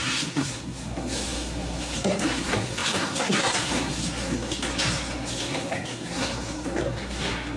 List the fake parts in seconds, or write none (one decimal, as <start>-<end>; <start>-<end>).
0.0-7.6